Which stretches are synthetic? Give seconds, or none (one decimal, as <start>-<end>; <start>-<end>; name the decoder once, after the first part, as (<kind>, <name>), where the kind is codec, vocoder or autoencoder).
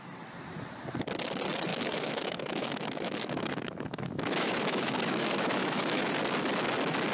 1.7-6.0 (autoencoder, DAC-VAE)